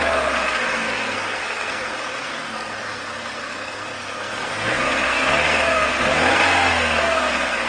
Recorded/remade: remade